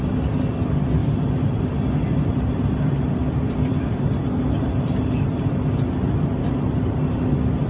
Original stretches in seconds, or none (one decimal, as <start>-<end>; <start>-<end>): 0.0-1.0; 4.0-7.7